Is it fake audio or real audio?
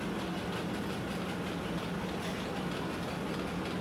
real